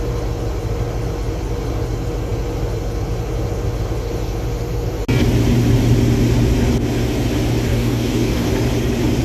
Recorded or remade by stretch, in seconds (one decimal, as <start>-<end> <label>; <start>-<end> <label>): 0.0-7.7 recorded; 7.7-8.5 remade; 8.5-9.2 recorded